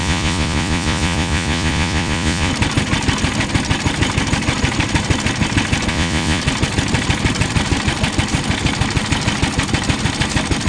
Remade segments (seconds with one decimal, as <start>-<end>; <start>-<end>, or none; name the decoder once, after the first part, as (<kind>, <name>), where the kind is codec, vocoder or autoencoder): 0.0-2.5 (vocoder, Vocos); 5.9-6.4